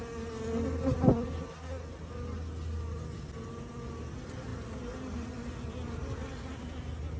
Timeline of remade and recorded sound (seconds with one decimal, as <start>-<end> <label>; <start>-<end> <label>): 0.0-7.2 recorded